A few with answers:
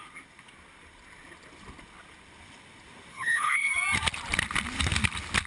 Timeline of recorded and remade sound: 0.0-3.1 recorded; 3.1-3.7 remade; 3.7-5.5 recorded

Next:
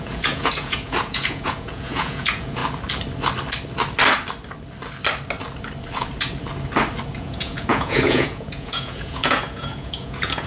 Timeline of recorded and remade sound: 0.0-2.6 remade; 2.6-7.2 recorded; 7.2-10.5 remade

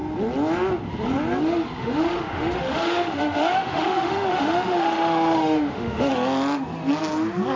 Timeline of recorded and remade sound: 0.0-1.8 recorded; 1.8-6.1 remade; 6.1-7.6 recorded